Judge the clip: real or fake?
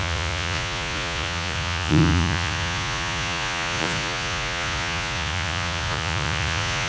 fake